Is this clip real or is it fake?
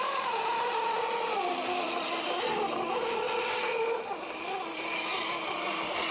real